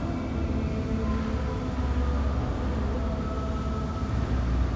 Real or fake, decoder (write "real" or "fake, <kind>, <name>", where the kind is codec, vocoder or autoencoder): real